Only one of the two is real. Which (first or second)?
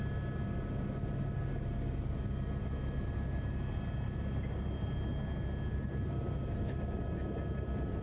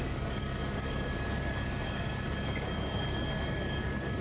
first